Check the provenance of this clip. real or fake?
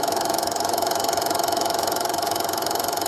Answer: fake